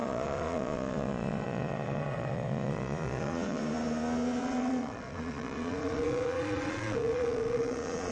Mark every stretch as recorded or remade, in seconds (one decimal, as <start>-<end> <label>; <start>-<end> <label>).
0.0-3.6 remade; 3.6-4.4 recorded; 4.4-8.1 remade